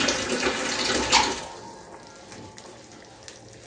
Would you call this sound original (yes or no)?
yes